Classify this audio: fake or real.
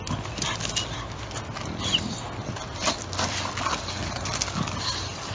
real